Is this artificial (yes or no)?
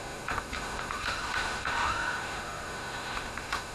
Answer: yes